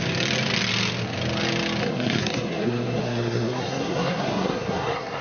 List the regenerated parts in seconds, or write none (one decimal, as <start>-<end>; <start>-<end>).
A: 1.8-5.2